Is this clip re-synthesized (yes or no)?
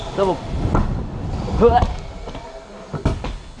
no